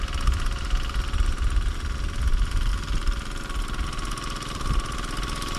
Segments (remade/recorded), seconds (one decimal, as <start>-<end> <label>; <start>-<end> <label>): 0.0-5.6 recorded